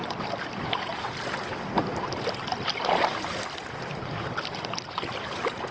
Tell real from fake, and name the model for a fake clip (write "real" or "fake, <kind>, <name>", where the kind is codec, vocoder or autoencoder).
real